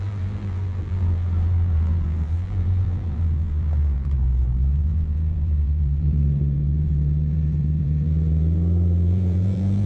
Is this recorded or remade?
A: remade